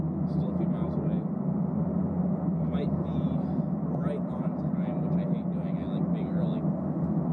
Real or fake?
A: real